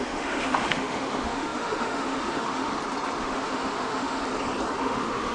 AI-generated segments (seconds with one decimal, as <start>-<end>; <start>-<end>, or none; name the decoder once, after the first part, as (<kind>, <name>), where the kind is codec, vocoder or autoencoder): 0.0-2.7 (autoencoder, DAC-VAE); 3.2-4.2; 4.8-5.3